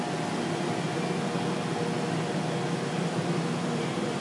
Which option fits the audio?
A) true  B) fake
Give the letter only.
A